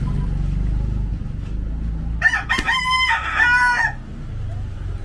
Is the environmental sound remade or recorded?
recorded